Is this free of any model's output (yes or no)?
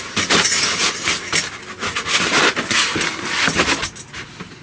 yes